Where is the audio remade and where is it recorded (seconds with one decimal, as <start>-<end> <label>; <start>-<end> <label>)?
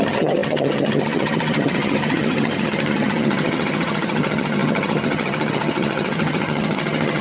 0.0-7.2 remade